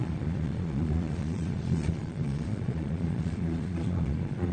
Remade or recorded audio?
remade